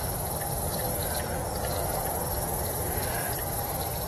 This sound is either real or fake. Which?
real